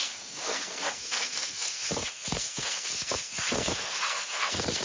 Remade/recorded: remade